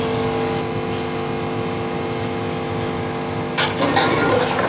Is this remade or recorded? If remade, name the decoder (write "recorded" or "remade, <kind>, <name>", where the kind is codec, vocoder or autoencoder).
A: recorded